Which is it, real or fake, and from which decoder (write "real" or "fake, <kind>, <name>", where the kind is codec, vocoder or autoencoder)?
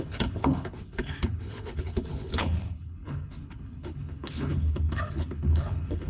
fake, codec, HILCodec